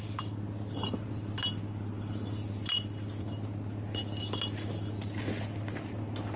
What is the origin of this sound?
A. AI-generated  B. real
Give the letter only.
B